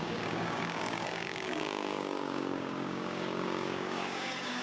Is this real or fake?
fake